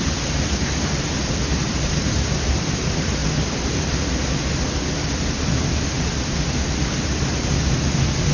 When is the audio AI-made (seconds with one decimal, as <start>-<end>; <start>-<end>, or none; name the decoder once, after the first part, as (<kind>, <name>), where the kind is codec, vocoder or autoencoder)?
0.0-3.2 (vocoder, BigVGAN v2)